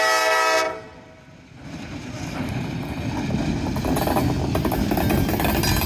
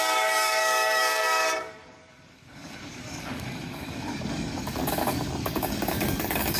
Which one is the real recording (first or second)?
first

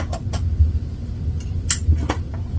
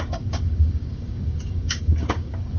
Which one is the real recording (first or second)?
first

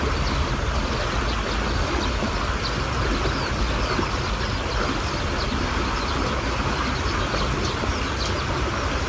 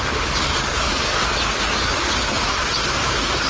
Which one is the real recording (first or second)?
first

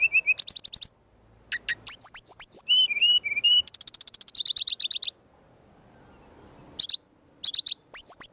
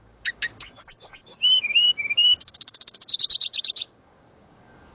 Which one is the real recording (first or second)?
first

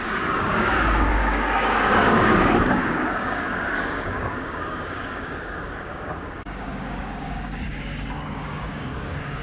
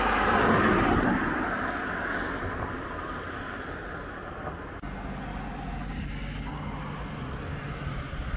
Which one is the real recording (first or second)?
second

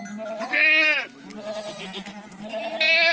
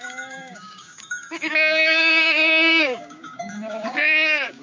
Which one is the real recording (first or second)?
first